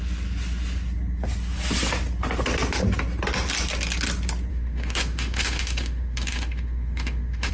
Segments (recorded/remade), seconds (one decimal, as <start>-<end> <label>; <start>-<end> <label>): 0.0-4.5 recorded; 4.5-7.5 remade